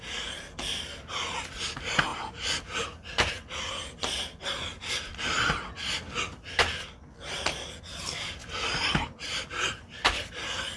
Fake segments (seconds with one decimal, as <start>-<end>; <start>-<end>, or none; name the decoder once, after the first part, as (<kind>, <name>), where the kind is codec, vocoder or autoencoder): none